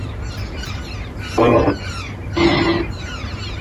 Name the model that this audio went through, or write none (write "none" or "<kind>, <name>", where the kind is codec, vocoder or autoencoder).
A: none